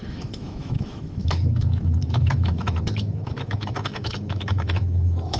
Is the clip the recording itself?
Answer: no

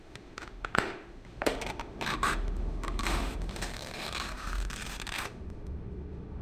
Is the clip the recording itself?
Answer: no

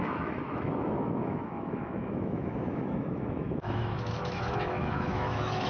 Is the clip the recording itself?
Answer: no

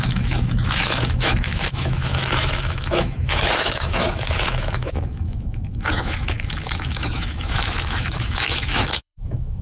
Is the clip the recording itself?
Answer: no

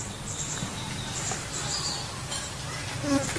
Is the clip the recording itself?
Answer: yes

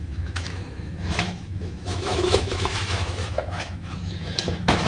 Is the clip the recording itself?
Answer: no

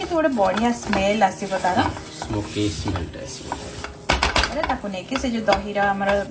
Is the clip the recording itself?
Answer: yes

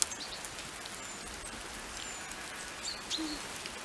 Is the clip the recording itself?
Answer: yes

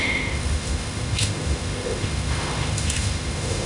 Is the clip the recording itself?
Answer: no